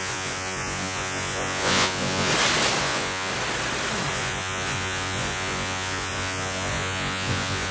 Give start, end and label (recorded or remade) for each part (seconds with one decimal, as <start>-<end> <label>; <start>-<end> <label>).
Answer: 0.0-2.3 remade; 2.3-2.8 recorded; 2.8-3.3 remade; 3.3-4.1 recorded; 4.1-7.7 remade

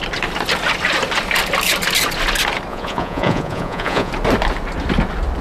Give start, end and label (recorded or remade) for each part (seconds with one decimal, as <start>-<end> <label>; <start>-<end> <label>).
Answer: 0.0-2.7 recorded; 2.7-4.1 remade; 4.1-5.4 recorded

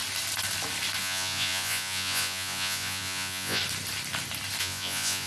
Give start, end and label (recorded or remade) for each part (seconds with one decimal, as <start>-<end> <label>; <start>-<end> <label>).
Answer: 0.0-1.0 recorded; 1.0-3.6 remade; 3.6-4.6 recorded; 4.6-5.3 remade

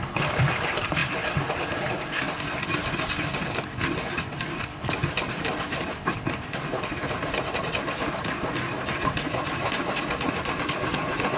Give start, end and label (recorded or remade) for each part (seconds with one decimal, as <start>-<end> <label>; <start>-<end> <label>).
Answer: 0.0-11.4 recorded

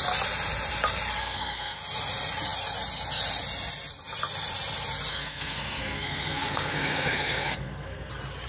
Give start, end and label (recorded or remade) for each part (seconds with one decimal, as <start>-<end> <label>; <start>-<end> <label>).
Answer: 0.0-1.2 recorded; 1.2-1.8 remade; 1.8-5.1 recorded; 5.1-8.1 remade; 8.1-8.5 recorded

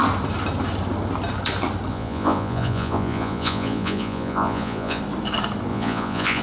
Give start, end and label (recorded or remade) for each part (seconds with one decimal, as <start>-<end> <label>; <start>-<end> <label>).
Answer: 0.0-1.9 recorded; 1.9-5.0 remade; 5.0-5.7 recorded; 5.7-6.4 remade

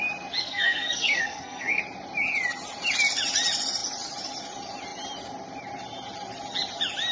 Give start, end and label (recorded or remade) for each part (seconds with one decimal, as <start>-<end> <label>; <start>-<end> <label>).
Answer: 0.0-0.4 recorded; 0.4-1.8 remade; 1.8-7.1 recorded

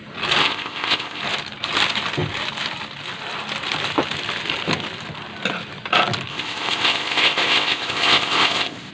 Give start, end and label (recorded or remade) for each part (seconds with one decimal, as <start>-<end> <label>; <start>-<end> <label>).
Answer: 0.0-0.4 recorded; 0.4-1.2 remade; 1.2-6.3 recorded; 6.3-8.9 remade